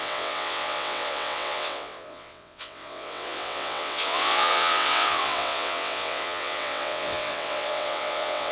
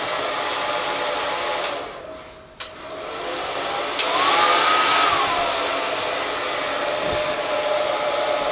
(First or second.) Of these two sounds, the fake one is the first